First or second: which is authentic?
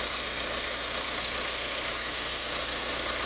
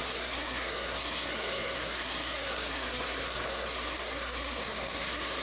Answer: first